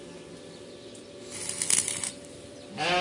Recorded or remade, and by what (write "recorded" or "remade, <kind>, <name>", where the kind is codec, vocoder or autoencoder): recorded